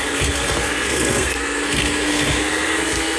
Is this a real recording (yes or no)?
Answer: no